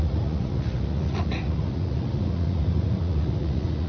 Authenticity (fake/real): fake